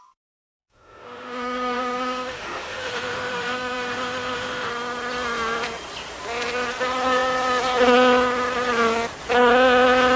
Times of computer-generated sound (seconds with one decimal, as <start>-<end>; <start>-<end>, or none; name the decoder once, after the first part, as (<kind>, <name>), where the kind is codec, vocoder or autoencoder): 0.6-4.7 (autoencoder, DAC-VAE)